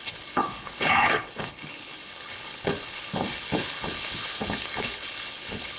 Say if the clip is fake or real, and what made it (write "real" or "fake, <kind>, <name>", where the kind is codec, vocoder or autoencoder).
fake, codec, HILCodec